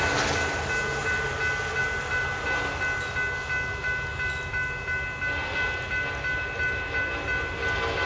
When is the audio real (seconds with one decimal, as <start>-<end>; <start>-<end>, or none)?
0.0-8.1